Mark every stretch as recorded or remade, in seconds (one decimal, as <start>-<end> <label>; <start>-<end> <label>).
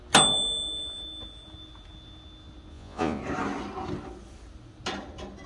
0.0-2.7 recorded; 2.7-3.2 remade; 3.2-5.5 recorded